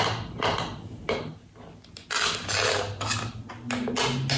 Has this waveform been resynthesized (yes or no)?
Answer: no